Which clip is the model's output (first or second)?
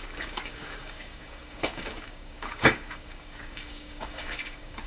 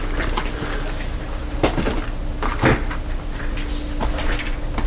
first